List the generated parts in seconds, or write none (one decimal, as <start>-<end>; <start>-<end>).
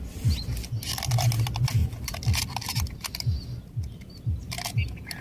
none